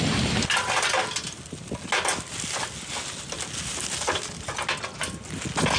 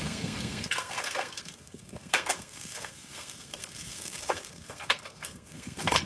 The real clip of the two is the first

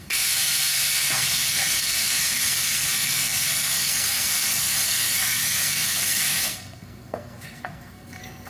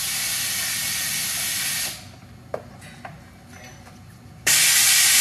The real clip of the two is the second